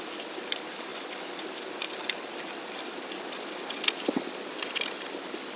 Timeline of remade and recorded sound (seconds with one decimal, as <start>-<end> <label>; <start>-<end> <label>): 0.0-5.6 recorded